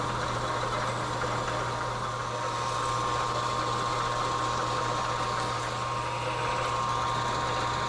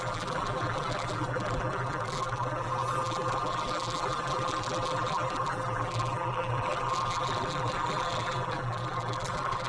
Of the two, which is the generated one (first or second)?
second